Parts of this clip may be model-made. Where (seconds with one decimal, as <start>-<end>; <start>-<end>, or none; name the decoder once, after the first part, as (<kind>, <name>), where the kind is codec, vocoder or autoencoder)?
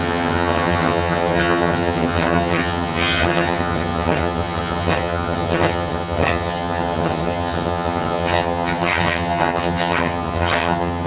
0.0-11.1 (vocoder, HiFi-GAN)